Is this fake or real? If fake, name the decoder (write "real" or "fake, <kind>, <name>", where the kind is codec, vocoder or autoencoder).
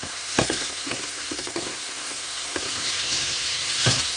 fake, codec, SNAC